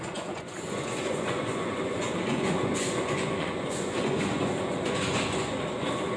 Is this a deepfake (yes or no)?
yes